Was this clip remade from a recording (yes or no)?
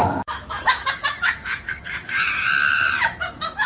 yes